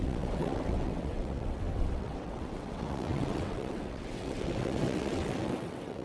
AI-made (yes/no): yes